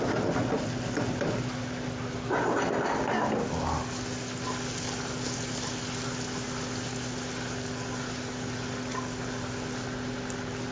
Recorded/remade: recorded